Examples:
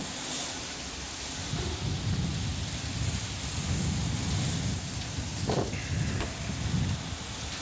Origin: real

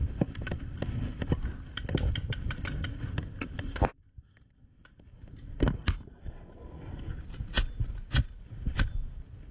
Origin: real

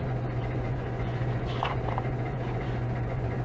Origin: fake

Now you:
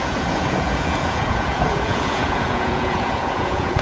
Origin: fake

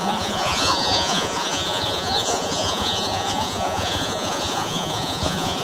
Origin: fake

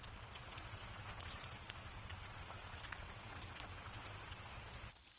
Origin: fake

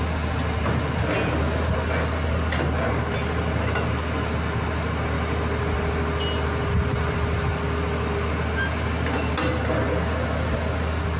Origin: real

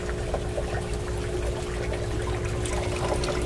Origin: real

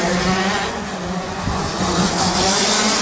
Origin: fake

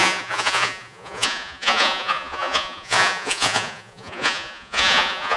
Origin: fake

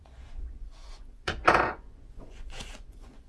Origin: fake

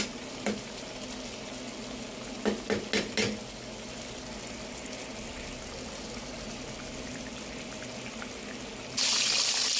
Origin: real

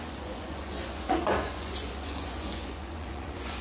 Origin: fake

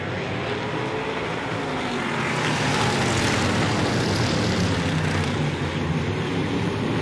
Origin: real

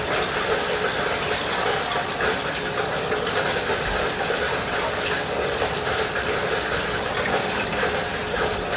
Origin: real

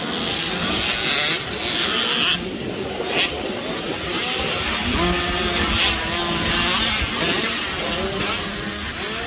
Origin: real